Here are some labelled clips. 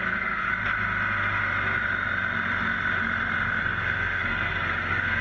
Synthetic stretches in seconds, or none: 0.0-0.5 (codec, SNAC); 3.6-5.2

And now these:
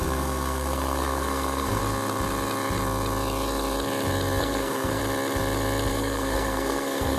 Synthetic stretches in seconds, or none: 0.0-1.8 (codec, SNAC); 4.4-5.0; 5.9-7.2

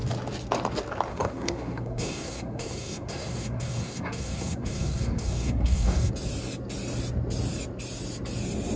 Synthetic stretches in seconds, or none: 1.1-6.1 (codec, SNAC)

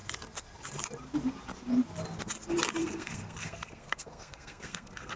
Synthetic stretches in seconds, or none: 2.8-5.2 (codec, SNAC)

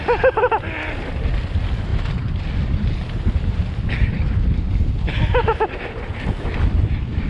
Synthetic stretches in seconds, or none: none

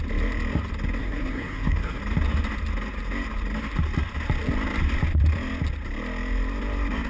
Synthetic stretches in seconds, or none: 1.0-2.0 (codec, SNAC)

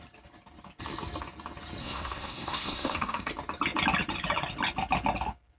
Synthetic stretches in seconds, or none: 1.8-3.3 (codec, SNAC)

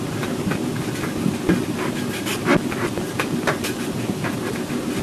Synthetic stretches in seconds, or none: none